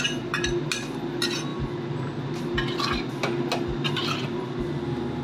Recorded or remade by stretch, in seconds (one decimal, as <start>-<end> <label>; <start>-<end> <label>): 0.0-5.2 recorded